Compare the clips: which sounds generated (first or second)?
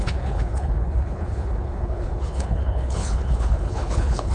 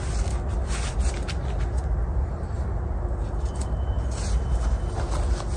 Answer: first